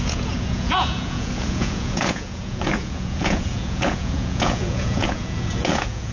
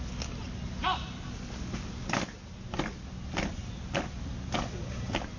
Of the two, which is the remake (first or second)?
first